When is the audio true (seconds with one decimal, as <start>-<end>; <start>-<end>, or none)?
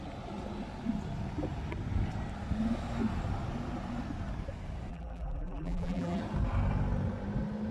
0.0-4.9; 6.2-7.7